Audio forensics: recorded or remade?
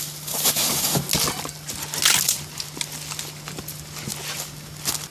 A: recorded